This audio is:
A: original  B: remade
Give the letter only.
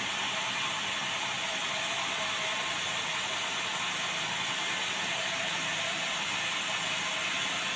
A